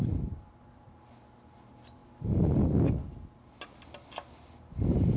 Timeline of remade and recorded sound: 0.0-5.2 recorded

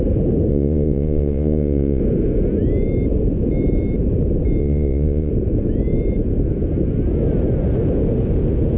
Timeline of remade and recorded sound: 0.0-0.5 recorded; 0.5-2.0 remade; 2.0-4.6 recorded; 4.6-5.3 remade; 5.3-8.8 recorded